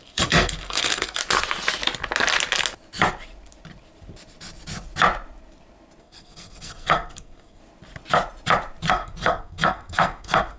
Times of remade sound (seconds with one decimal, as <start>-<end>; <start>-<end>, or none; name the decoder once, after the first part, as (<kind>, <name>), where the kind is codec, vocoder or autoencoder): 0.0-1.2 (codec, SNAC); 6.0-7.6; 8.9-10.6